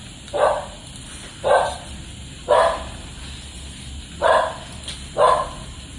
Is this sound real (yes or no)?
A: yes